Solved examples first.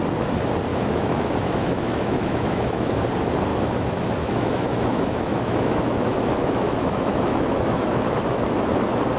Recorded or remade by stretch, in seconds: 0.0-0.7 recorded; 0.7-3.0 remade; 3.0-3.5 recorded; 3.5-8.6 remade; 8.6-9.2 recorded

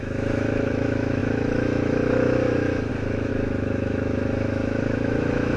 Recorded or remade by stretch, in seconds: 0.0-5.6 remade

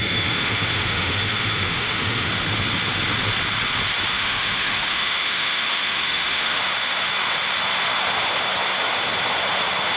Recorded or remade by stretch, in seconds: 0.0-2.3 remade; 2.3-4.1 recorded; 4.1-6.6 remade; 6.6-10.0 recorded

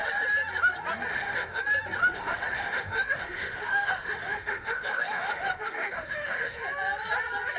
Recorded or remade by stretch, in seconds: 0.0-1.1 recorded; 1.1-1.6 remade; 1.6-2.0 recorded; 2.0-6.6 remade; 6.6-7.6 recorded

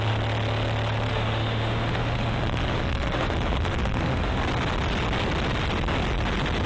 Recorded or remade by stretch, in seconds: 0.0-1.1 recorded; 1.1-4.4 remade; 4.4-6.7 recorded